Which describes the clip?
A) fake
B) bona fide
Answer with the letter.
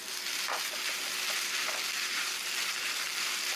A